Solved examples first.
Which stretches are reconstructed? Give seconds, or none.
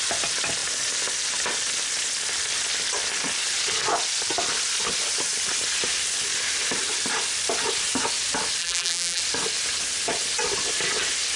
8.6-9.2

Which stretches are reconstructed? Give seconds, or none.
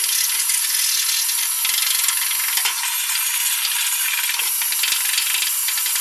3.0-4.4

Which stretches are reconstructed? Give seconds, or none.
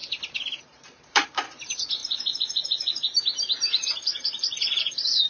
0.6-5.3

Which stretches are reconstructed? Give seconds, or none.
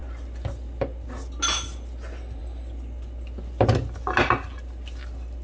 none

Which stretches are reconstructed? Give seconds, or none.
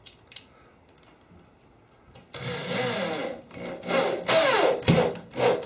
none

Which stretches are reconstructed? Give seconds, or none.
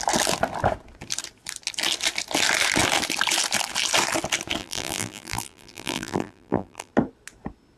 4.6-6.9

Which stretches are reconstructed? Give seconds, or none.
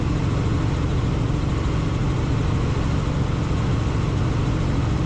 none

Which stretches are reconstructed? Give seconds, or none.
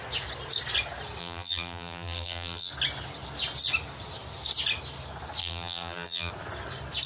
1.2-2.7; 5.4-6.3